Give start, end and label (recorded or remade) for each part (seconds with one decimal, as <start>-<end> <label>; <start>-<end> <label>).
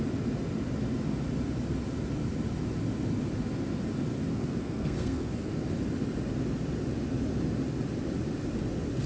0.0-4.3 recorded; 4.3-5.5 remade; 5.5-9.1 recorded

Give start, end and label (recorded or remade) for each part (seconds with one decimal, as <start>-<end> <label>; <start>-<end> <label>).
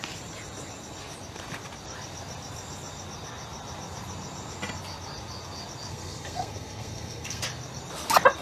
0.0-5.9 recorded; 5.9-7.4 remade; 7.4-8.4 recorded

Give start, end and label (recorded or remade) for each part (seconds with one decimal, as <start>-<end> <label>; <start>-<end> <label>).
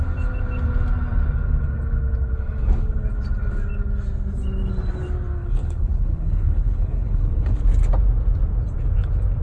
0.0-5.4 recorded; 5.4-7.6 remade; 7.6-9.4 recorded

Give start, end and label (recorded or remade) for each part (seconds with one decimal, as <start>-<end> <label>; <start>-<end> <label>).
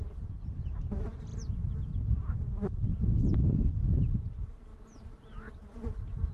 0.0-4.7 remade; 4.7-5.5 recorded; 5.5-6.3 remade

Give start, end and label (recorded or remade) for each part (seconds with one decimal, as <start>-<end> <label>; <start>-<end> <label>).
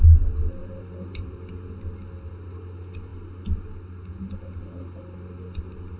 0.0-0.6 recorded; 0.6-1.7 remade; 1.7-6.0 recorded